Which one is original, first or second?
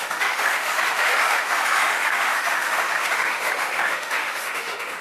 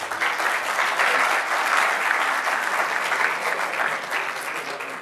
second